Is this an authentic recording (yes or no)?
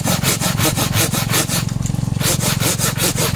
yes